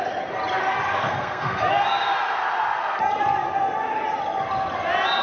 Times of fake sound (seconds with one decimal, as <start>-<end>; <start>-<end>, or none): 0.9-1.6